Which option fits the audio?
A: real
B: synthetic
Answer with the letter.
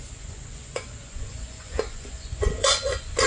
B